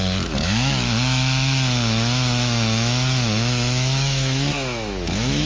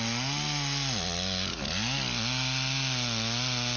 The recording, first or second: second